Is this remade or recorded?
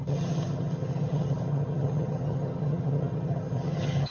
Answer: remade